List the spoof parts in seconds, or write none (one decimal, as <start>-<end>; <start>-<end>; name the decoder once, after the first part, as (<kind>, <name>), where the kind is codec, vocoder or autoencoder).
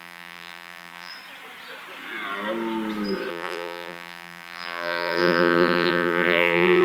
0.0-1.1 (vocoder, BigVGAN v2); 3.3-6.8